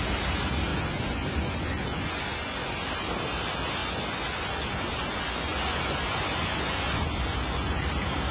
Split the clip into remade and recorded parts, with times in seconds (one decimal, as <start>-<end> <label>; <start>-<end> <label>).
0.0-0.7 recorded; 0.7-2.7 remade; 2.7-3.8 recorded; 3.8-7.8 remade; 7.8-8.3 recorded

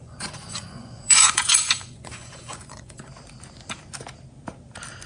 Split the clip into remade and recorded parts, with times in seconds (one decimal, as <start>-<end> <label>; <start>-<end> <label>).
0.0-3.1 remade; 3.1-5.1 recorded

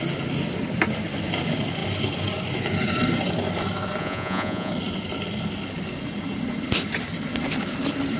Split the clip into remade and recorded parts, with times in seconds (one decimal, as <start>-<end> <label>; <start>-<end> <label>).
0.0-4.0 recorded; 4.0-4.7 remade; 4.7-8.2 recorded

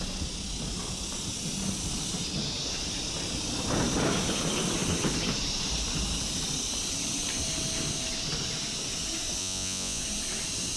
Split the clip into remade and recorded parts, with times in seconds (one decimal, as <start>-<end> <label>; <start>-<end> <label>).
0.0-9.4 recorded; 9.4-10.0 remade; 10.0-10.8 recorded

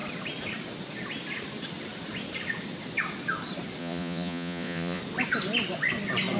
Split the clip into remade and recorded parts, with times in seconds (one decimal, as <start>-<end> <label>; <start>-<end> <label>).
0.0-3.8 recorded; 3.8-5.0 remade; 5.0-6.4 recorded

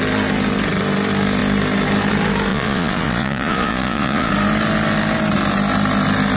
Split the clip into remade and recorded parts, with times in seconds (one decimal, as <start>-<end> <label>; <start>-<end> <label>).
0.0-2.5 recorded; 2.5-4.3 remade; 4.3-6.4 recorded

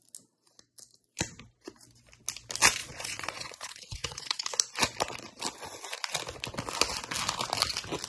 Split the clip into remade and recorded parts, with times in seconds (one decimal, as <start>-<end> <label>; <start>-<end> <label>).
0.0-2.8 recorded; 2.8-4.5 remade; 4.5-8.1 recorded